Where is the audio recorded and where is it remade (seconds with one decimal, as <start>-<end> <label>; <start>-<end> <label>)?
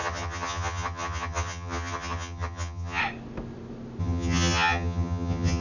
0.0-3.0 remade; 3.0-4.0 recorded; 4.0-5.6 remade